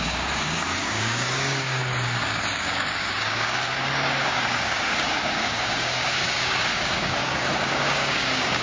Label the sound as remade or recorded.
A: remade